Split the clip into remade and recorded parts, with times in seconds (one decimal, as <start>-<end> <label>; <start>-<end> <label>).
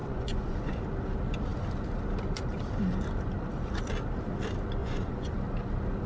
0.0-0.8 remade; 0.8-4.8 recorded; 4.8-5.3 remade; 5.3-6.1 recorded